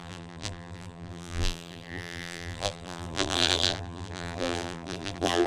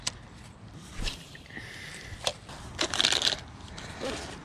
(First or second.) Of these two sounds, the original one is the second